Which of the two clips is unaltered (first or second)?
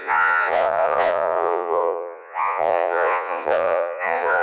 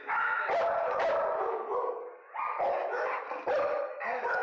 second